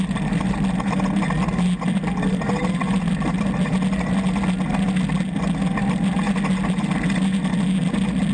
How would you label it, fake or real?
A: real